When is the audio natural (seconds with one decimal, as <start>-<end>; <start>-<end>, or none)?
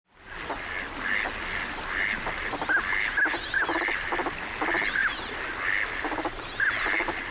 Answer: 0.0-7.3